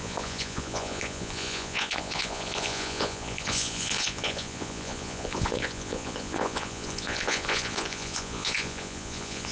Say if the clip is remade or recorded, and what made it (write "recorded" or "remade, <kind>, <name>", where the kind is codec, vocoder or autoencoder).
remade, vocoder, Vocos